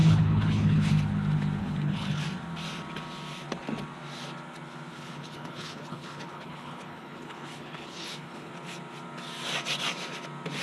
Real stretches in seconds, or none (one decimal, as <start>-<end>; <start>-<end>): 0.9-1.6; 2.2-4.9; 8.5-10.6